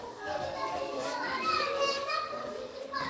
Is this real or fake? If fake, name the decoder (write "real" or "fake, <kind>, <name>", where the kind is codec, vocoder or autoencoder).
fake, codec, DAC